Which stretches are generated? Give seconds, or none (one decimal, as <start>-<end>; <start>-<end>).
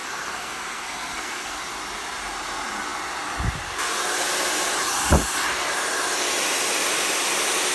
0.0-1.6